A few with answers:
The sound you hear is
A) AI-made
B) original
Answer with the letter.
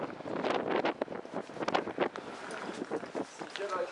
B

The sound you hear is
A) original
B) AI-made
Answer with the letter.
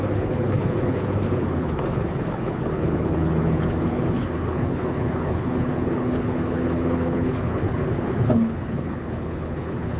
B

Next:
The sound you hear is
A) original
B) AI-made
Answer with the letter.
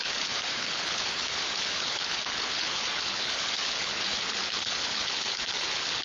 B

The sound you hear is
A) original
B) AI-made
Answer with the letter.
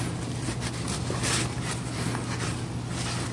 A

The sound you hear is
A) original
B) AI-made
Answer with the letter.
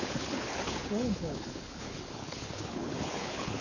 B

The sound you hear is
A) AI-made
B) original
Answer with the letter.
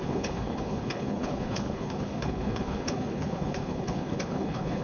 A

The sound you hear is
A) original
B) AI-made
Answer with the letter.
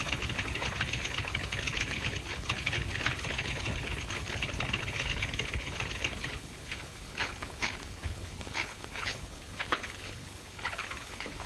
B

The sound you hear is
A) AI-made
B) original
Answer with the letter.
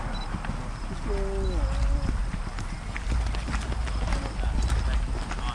B